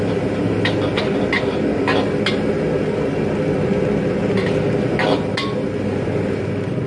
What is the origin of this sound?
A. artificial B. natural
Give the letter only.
B